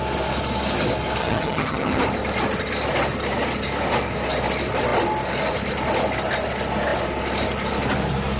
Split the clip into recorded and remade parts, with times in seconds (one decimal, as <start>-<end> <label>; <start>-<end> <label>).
0.0-1.2 recorded; 1.2-2.0 remade; 2.0-8.4 recorded

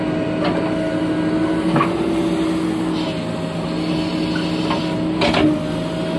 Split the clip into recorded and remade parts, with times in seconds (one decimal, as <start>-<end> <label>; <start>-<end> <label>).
0.0-6.2 recorded

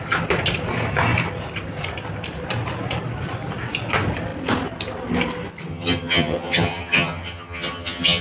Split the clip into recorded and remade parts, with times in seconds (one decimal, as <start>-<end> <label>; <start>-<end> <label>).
0.0-5.7 recorded; 5.7-8.2 remade